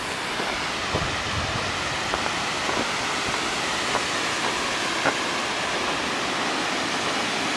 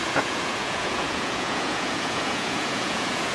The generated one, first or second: second